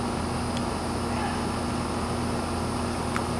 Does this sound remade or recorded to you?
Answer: recorded